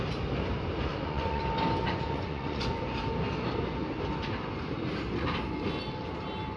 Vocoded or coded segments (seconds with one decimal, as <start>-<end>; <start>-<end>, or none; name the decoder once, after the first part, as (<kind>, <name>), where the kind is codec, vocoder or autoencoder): 0.9-1.4 (vocoder, Vocos); 1.8-2.8